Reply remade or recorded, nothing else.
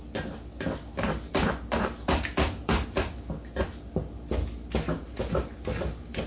recorded